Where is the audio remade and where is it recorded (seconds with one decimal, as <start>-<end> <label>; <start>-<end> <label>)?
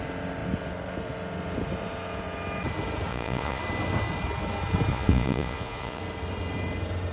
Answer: 0.0-3.1 recorded; 3.1-3.6 remade; 3.6-4.9 recorded; 4.9-6.0 remade; 6.0-7.1 recorded